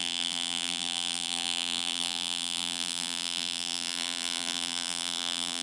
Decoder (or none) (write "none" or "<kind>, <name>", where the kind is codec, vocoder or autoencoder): vocoder, BigVGAN v2